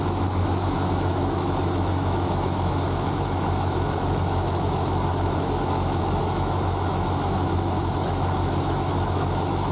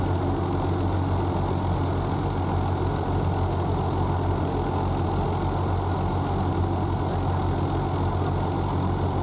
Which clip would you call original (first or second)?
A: second